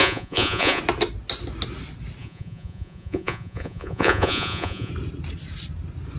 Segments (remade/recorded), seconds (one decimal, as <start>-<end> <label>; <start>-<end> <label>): 0.0-0.8 remade; 0.8-2.2 recorded; 2.2-4.9 remade; 4.9-6.2 recorded